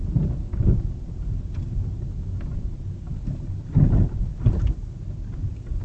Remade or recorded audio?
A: recorded